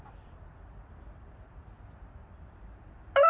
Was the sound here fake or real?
real